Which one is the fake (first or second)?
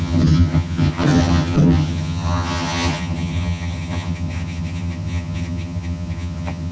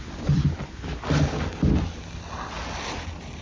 first